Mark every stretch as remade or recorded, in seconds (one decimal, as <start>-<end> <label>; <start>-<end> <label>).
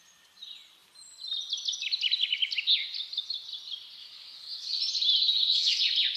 0.0-4.0 recorded; 4.0-4.8 remade; 4.8-5.3 recorded; 5.3-5.8 remade; 5.8-6.2 recorded